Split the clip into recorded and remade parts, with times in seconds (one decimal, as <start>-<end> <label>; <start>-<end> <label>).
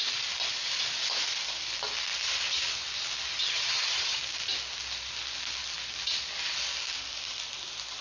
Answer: 0.0-3.4 recorded; 3.4-4.2 remade; 4.2-8.0 recorded